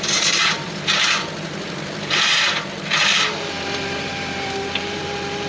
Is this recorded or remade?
remade